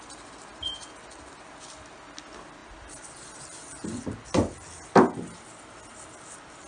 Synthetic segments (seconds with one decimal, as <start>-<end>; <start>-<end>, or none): none